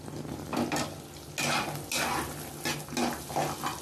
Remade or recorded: recorded